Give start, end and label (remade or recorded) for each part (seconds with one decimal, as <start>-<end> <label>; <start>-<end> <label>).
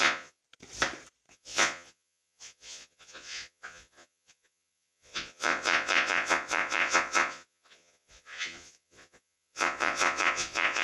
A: 0.0-0.4 remade; 0.4-1.3 recorded; 1.3-10.8 remade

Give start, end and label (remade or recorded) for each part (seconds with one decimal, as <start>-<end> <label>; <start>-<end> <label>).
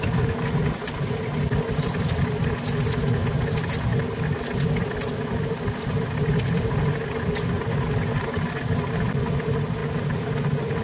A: 0.0-10.8 recorded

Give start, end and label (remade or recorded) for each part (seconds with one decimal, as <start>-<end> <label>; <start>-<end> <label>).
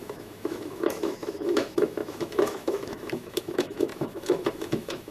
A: 0.0-5.1 remade